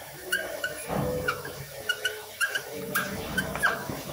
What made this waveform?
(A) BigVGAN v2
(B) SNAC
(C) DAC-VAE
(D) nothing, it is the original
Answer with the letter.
C